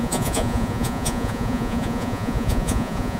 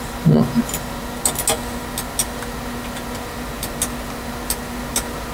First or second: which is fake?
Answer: first